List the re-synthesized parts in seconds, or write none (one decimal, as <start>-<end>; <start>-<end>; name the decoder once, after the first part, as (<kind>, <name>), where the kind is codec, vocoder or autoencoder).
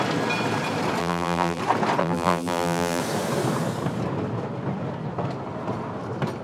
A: 1.0-1.6 (vocoder, BigVGAN v2); 2.0-3.0